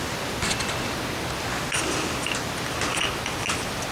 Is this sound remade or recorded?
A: recorded